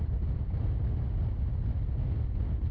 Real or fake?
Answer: real